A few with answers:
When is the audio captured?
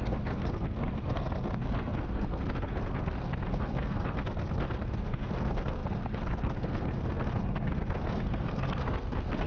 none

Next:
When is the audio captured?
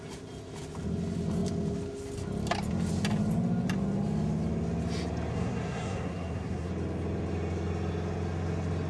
0.0-5.3; 6.7-8.9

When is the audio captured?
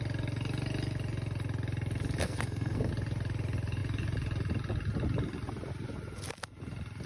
0.0-2.2; 2.9-7.1